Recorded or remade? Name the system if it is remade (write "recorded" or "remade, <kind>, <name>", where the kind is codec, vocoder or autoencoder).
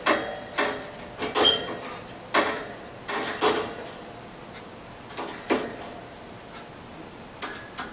recorded